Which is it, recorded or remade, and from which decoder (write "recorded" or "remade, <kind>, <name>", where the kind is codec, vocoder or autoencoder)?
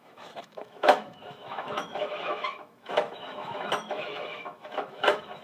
remade, autoencoder, DAC-VAE